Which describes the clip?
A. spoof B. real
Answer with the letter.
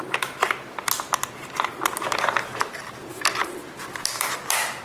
B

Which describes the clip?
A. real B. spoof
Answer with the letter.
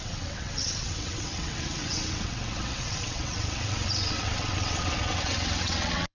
B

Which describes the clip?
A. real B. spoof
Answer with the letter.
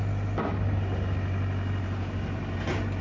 A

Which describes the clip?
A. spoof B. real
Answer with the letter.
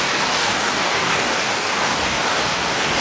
A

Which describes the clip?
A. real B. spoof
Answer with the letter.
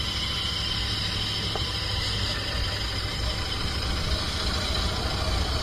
A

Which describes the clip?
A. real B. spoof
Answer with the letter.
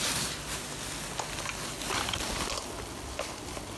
A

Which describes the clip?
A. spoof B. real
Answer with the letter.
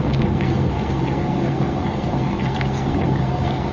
A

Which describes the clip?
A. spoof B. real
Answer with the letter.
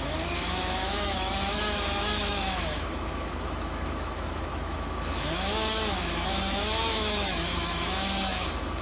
A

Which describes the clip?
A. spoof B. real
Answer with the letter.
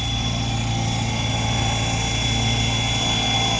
B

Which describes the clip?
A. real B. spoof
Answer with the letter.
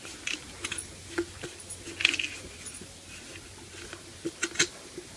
A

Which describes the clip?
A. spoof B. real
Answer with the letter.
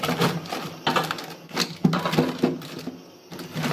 B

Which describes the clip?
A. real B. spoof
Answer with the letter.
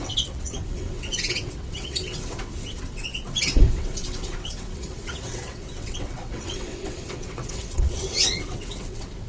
B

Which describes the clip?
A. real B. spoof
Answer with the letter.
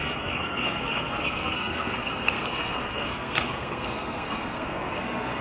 B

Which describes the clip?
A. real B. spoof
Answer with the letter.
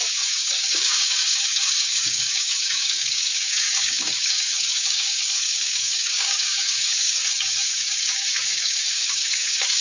B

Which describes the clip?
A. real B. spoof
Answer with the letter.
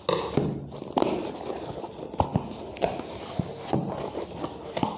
A